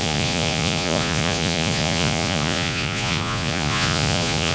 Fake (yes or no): yes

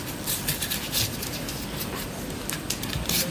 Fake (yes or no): no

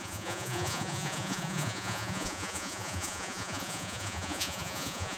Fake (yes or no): yes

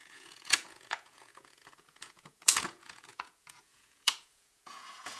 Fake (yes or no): yes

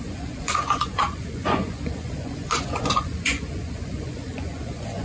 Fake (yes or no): yes